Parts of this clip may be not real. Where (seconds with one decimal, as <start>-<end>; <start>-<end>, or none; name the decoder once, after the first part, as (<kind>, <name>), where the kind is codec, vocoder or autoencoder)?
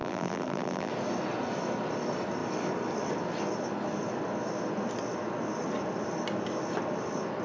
0.0-0.9 (vocoder, BigVGAN v2)